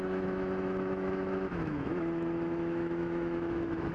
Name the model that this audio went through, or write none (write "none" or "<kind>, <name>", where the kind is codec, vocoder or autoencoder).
autoencoder, DAC-VAE